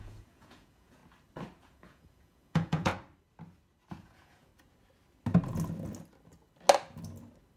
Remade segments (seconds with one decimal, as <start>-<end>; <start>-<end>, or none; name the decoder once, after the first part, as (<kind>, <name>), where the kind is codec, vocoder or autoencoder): 0.0-1.0 (vocoder, Vocos); 1.6-2.9; 3.9-4.5